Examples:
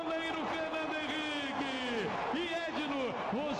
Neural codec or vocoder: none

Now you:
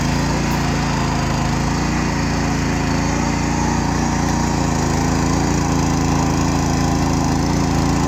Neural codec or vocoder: none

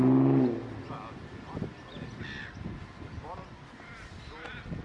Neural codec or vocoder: none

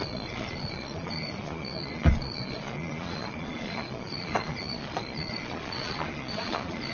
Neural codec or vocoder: vocoder, Vocos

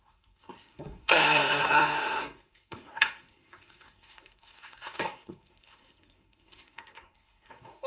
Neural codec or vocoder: codec, SNAC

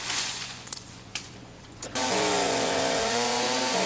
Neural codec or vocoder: vocoder, Vocos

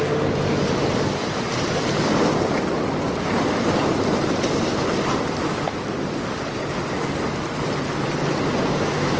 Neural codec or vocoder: none